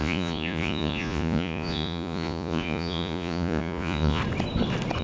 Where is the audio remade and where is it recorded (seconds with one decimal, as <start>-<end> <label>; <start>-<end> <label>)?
0.0-4.2 remade; 4.2-5.0 recorded